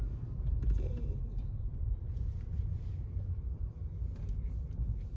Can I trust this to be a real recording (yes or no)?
no